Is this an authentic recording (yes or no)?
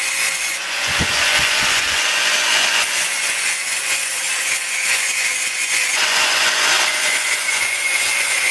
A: no